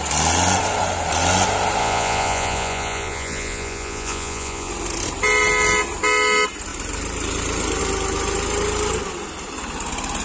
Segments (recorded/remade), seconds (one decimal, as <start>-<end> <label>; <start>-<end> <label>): 0.0-1.8 recorded; 1.8-4.7 remade; 4.7-10.2 recorded